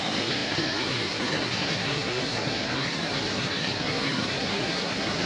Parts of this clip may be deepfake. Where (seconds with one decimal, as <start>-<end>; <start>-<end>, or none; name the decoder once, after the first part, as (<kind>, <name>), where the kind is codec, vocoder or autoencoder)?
0.0-5.3 (codec, SNAC)

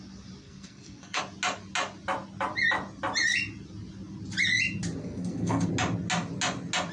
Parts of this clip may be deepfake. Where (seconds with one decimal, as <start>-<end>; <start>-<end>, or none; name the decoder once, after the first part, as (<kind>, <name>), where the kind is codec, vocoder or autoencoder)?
0.4-1.2 (codec, SNAC); 5.0-5.7

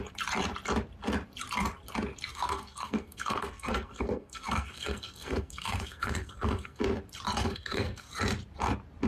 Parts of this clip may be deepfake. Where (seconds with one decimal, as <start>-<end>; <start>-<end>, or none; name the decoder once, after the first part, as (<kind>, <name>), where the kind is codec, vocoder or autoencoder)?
2.3-6.8 (codec, SNAC); 7.4-8.1

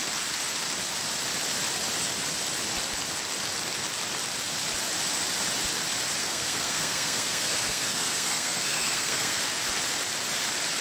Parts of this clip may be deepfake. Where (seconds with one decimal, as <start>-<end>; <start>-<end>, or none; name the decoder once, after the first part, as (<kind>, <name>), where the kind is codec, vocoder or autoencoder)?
6.2-9.4 (codec, SNAC)

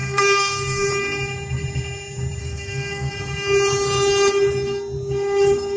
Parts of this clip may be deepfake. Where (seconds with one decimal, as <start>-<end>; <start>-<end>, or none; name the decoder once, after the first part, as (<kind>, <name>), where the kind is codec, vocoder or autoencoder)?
0.0-0.9 (codec, SNAC); 2.4-3.1

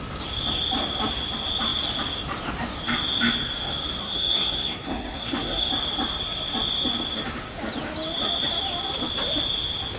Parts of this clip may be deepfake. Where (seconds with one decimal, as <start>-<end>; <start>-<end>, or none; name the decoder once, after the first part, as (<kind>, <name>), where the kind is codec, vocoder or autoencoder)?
4.0-5.7 (codec, SNAC)

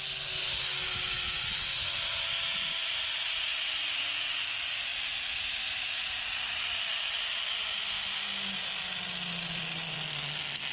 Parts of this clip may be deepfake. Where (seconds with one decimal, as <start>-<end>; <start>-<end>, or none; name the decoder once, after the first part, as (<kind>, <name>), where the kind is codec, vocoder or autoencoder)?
none